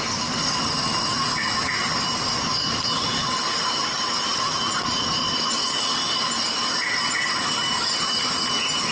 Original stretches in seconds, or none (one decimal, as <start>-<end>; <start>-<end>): 0.0-8.9